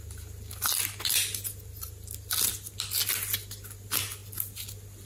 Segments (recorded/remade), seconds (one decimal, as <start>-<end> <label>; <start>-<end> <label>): 0.0-5.1 recorded